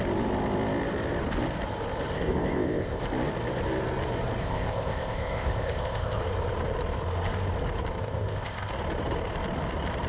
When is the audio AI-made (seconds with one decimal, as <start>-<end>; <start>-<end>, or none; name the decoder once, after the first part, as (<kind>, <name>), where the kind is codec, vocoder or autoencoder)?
2.1-3.0 (codec, ZipCodec); 4.4-6.2; 8.0-8.7